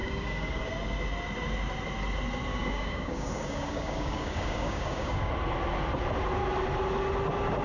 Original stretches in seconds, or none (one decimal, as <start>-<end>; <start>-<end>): 0.7-2.5; 5.3-7.6

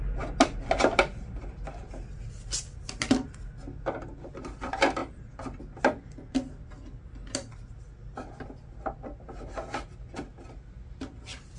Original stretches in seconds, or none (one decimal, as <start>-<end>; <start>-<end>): 0.0-11.6

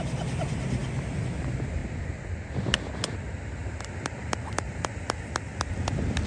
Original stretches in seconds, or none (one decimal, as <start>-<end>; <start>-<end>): 0.0-6.3

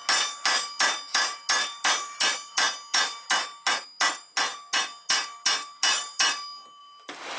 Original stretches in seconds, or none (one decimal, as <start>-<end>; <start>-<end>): 0.0-6.8

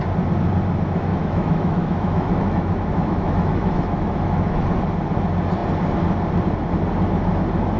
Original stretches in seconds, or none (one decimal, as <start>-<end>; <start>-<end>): 0.0-1.1; 4.6-7.8